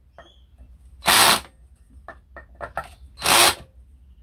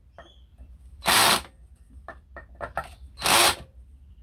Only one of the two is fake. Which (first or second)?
second